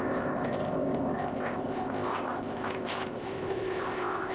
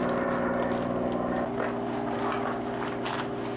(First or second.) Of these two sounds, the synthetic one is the first